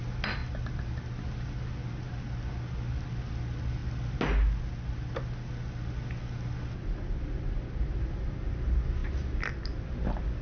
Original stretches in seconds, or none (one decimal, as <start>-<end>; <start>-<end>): 0.0-10.4